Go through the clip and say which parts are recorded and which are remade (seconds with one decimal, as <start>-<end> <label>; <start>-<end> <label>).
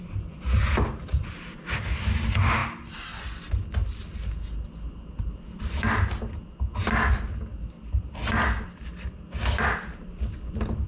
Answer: 0.0-10.9 recorded